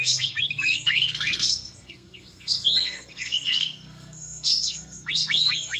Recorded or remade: remade